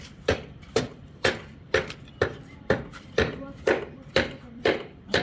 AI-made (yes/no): yes